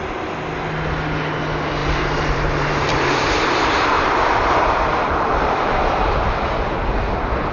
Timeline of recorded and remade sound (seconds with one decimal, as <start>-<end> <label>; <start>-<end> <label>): 0.0-1.8 recorded; 1.8-5.6 remade; 5.6-7.5 recorded